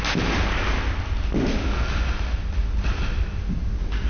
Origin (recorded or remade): recorded